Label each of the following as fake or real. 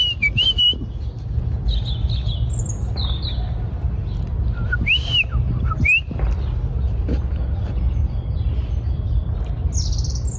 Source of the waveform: real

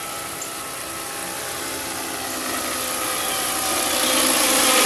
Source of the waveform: real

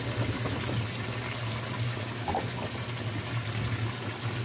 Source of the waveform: real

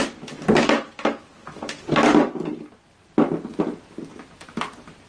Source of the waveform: real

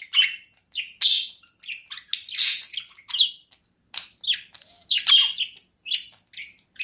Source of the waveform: real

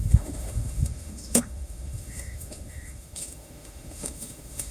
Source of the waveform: fake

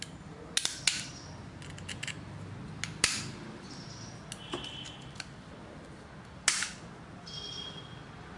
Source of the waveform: real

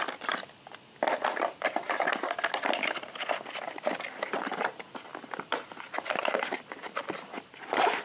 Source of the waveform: real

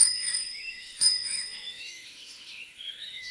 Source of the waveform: fake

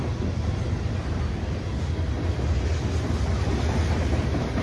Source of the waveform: real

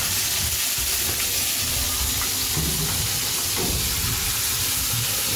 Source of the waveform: real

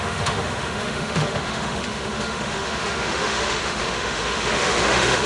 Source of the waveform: fake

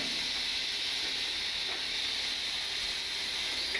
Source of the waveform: real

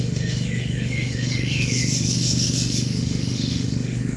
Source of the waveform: fake